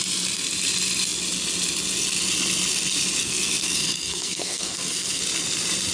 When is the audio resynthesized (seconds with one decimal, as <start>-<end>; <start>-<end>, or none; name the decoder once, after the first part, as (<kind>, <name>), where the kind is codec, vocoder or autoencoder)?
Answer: 3.2-5.2 (codec, SNAC)